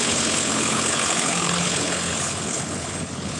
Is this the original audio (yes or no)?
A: no